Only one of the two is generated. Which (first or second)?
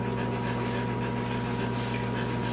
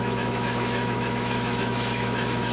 second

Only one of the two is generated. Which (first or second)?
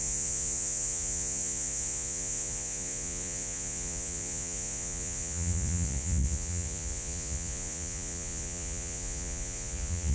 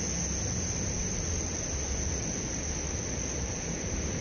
first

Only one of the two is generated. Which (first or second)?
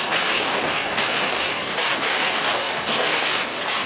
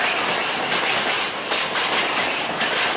first